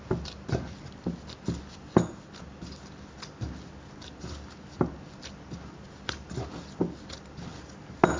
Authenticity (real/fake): real